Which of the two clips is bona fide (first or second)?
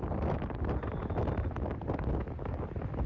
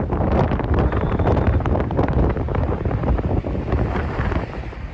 first